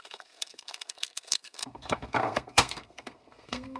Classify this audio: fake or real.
fake